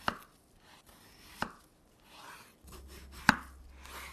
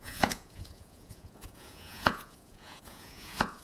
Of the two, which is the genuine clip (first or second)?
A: first